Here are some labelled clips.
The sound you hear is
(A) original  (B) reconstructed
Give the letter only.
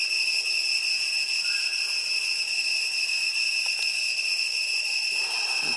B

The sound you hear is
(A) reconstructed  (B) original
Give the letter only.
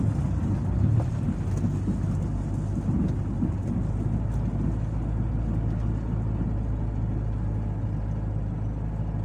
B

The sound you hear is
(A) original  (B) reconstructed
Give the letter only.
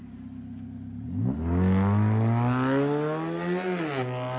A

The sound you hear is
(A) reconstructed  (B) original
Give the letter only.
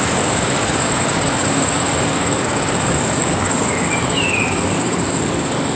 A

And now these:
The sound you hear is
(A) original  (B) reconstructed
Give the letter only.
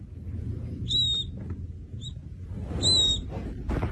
A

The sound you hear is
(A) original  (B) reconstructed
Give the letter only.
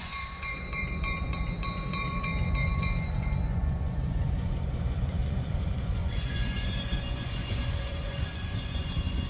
B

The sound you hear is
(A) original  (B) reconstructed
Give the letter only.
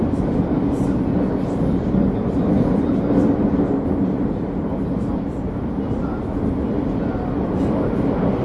A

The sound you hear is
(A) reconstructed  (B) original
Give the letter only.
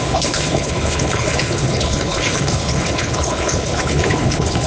A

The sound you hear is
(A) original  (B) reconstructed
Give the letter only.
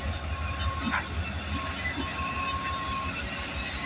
A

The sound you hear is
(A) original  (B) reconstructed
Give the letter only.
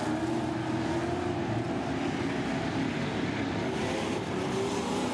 A